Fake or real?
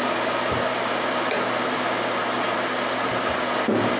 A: real